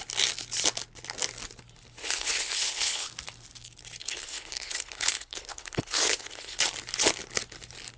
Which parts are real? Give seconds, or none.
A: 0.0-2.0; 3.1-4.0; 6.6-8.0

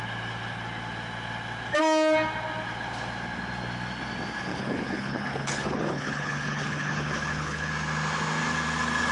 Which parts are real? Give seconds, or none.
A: 0.0-4.5; 7.7-9.1